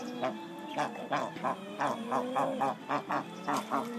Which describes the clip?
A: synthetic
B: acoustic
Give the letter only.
B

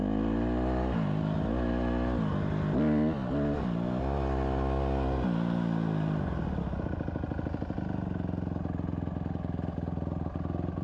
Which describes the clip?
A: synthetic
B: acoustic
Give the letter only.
B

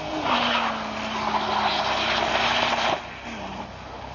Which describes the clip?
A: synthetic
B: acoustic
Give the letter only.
B